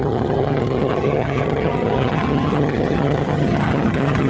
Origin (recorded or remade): remade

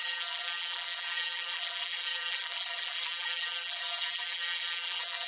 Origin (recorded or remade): remade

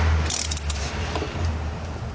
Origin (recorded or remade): recorded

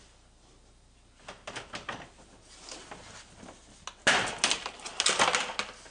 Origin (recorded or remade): recorded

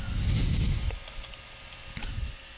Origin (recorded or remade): recorded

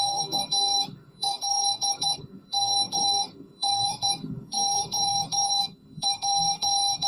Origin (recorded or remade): remade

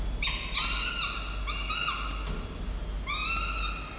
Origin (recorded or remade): recorded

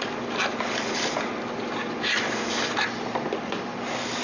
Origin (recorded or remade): recorded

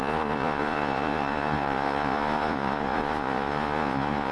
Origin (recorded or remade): remade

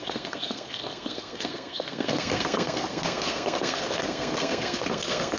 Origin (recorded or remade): remade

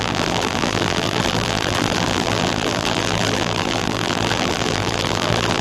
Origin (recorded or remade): remade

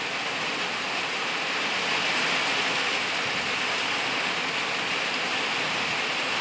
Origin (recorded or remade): recorded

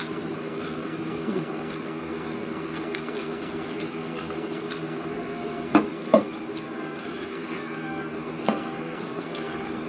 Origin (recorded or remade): remade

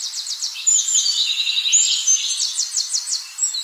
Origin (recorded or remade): recorded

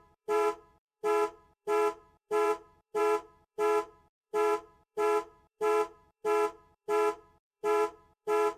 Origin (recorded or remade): remade